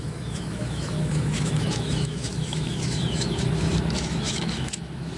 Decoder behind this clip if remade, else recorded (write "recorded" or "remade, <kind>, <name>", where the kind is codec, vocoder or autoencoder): remade, autoencoder, DAC-VAE